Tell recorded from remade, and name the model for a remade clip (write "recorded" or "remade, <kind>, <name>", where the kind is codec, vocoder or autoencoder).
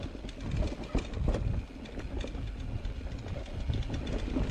recorded